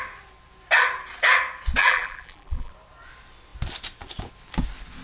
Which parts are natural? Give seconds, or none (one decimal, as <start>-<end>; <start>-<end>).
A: 0.0-1.8; 2.7-5.0